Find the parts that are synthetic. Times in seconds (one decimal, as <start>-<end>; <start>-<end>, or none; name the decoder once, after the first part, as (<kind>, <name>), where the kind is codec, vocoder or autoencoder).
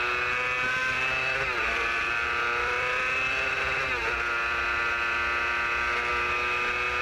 0.8-3.6 (vocoder, BigVGAN v2)